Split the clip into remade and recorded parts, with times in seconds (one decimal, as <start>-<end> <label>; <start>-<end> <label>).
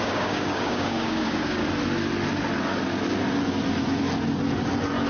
0.0-1.6 remade; 1.6-5.1 recorded